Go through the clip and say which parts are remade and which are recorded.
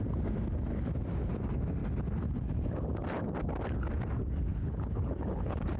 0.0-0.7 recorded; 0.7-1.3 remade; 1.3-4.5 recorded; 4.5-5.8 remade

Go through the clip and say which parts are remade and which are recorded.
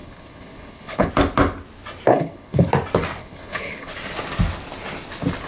0.0-1.1 remade; 1.1-2.1 recorded; 2.1-2.7 remade; 2.7-3.2 recorded; 3.2-3.9 remade; 3.9-5.5 recorded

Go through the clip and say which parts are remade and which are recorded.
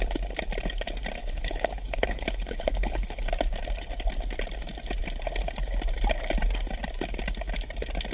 0.0-1.2 recorded; 1.2-3.3 remade; 3.3-8.1 recorded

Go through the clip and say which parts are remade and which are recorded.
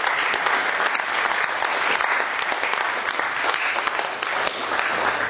0.0-5.3 recorded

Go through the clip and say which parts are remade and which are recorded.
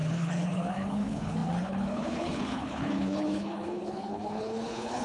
0.0-5.0 remade